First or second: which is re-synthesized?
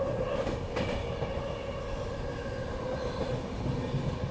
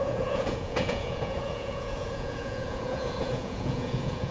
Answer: second